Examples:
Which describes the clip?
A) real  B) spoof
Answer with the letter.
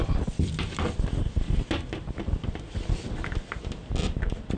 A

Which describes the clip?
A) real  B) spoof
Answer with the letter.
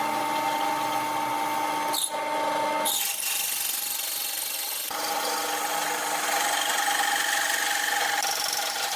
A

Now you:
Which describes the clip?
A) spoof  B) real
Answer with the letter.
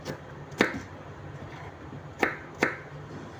B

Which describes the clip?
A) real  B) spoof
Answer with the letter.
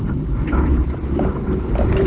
B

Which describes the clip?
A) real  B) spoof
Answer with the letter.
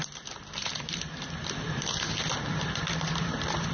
B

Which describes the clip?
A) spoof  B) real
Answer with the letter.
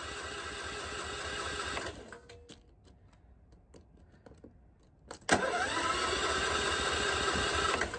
B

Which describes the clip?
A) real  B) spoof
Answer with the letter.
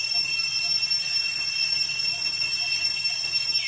A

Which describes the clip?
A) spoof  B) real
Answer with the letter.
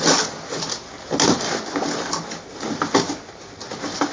B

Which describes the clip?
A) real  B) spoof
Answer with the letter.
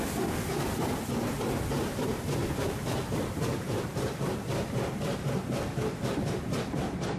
A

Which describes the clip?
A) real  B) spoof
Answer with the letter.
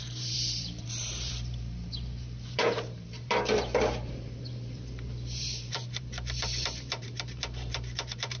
B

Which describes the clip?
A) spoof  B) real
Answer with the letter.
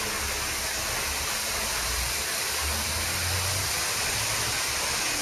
B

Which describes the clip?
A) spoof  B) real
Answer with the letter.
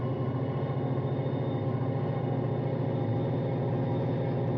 B